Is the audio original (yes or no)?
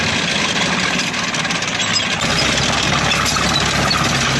yes